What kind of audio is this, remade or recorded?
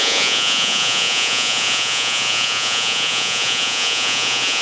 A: remade